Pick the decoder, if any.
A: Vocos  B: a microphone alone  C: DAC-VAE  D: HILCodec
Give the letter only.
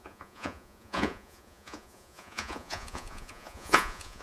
A